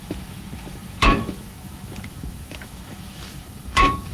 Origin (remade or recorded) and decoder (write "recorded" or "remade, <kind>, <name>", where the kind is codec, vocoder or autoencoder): remade, autoencoder, DAC-VAE